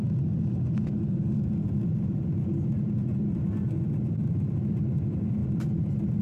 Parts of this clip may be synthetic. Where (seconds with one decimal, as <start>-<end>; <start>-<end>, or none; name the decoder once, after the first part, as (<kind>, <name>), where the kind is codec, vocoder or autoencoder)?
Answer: none